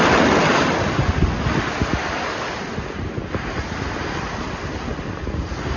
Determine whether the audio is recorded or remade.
recorded